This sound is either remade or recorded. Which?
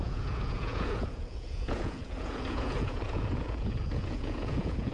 remade